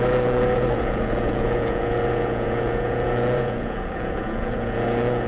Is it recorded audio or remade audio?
remade